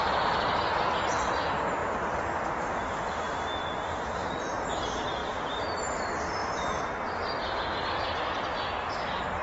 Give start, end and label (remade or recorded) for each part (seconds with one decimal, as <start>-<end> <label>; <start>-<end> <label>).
0.0-1.8 recorded; 1.8-4.7 remade; 4.7-5.2 recorded; 5.2-5.8 remade; 5.8-9.4 recorded